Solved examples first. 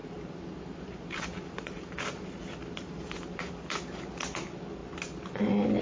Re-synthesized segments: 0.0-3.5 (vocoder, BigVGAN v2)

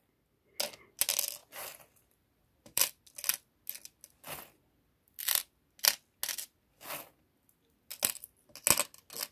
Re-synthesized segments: 1.4-3.0 (vocoder, BigVGAN v2)

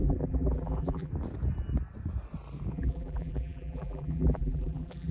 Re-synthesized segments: 0.0-1.1 (vocoder, BigVGAN v2); 2.7-5.1